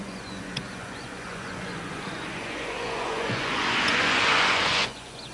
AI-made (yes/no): yes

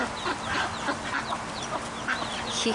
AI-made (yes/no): no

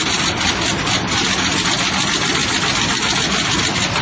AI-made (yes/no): no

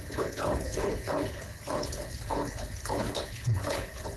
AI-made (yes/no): yes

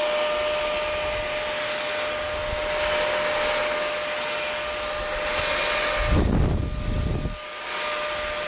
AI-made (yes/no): no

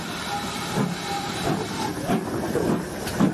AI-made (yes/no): no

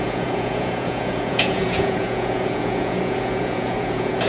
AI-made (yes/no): yes